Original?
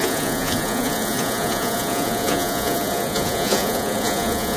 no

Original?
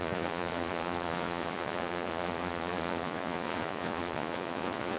no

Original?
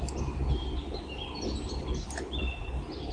yes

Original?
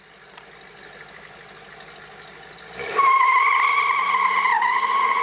yes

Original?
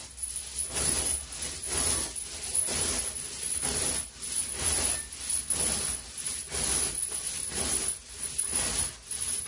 yes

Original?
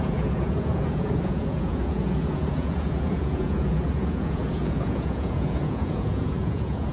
no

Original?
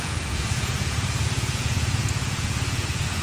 no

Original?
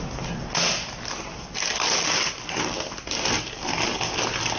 yes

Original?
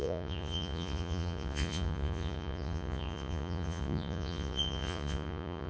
no